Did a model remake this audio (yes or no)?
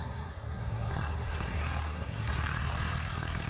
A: yes